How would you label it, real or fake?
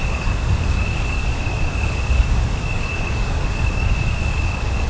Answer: fake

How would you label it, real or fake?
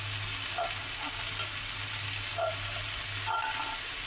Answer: real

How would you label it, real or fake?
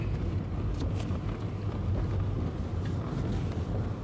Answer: real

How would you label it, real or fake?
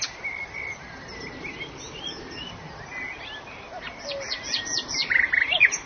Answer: real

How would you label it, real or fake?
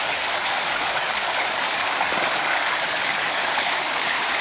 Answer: fake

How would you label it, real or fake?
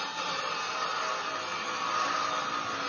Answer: real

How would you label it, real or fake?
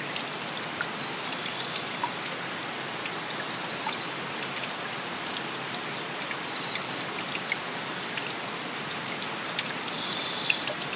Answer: real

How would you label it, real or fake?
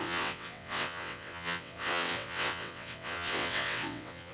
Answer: fake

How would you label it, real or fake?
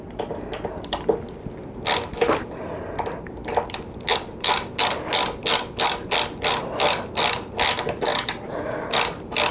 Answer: real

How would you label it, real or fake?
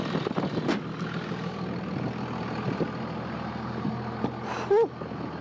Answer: real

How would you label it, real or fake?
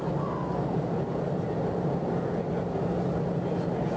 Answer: real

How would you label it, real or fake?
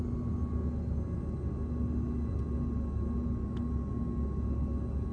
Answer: real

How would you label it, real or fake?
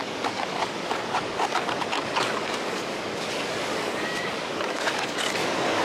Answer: fake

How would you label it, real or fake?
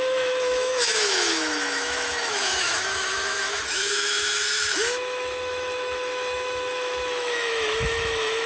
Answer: fake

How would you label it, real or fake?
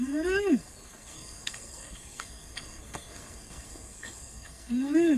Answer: fake